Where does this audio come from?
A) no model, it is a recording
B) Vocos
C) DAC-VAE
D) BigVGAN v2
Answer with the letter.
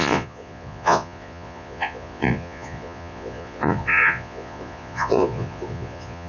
B